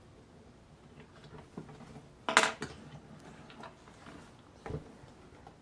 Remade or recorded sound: recorded